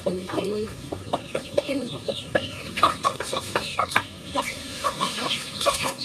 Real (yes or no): no